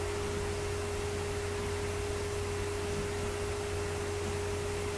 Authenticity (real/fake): real